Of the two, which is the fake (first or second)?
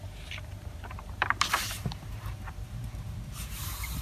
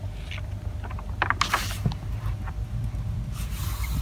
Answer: first